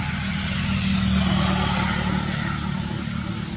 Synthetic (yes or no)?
no